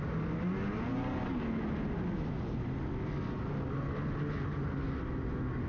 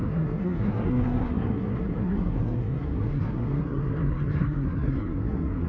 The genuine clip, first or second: first